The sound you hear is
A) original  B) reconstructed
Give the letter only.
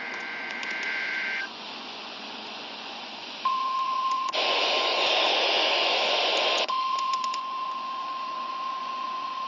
B